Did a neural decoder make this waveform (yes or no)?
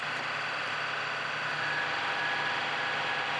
no